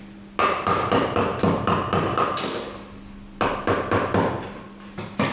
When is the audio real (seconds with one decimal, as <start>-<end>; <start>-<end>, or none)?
0.0-5.3